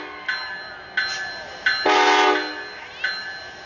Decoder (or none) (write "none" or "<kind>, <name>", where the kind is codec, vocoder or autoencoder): none